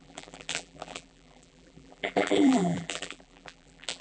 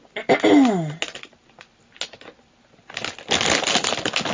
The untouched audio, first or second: second